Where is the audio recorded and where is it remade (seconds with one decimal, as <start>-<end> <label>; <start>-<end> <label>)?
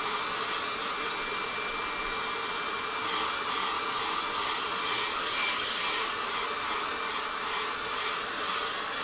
0.0-5.1 recorded; 5.1-5.9 remade; 5.9-9.0 recorded